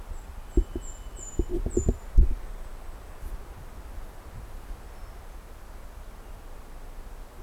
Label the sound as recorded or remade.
recorded